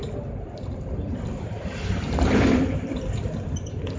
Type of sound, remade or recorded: remade